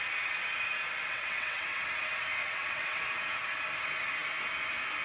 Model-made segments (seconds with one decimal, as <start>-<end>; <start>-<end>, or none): 1.0-1.8; 2.4-3.0